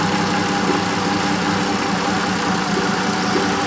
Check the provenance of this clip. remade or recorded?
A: recorded